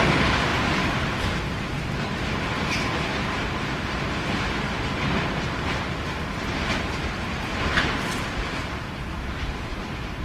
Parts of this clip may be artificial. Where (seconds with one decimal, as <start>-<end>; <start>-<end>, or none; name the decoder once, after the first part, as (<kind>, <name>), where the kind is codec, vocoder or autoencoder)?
none